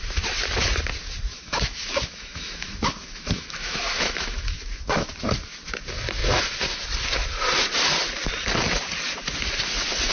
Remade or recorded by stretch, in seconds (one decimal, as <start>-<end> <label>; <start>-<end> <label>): 0.0-1.3 recorded; 1.3-5.1 remade; 5.1-10.1 recorded

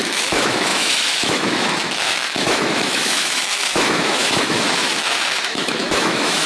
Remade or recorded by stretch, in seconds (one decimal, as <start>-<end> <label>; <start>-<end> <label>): 0.0-6.5 remade

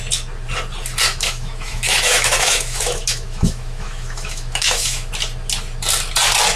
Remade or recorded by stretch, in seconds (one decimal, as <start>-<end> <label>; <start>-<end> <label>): 0.0-1.1 recorded; 1.1-5.1 remade; 5.1-6.6 recorded

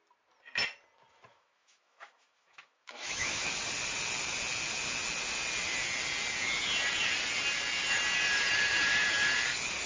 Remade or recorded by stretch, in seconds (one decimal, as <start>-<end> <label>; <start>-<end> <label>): 0.0-1.3 recorded; 1.3-3.5 remade; 3.5-9.9 recorded

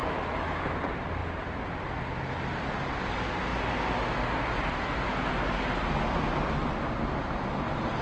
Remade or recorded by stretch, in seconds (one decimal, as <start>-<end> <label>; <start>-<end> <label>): 0.0-0.6 remade; 0.6-8.0 recorded

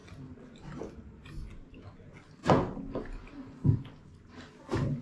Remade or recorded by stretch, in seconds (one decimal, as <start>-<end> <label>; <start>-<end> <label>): 0.0-5.0 recorded

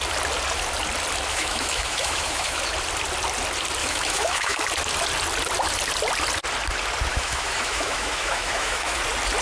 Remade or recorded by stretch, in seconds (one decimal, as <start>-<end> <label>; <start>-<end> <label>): 0.0-1.3 recorded; 1.3-2.6 remade; 2.6-3.8 recorded; 3.8-4.6 remade; 4.6-7.1 recorded; 7.1-9.0 remade; 9.0-9.4 recorded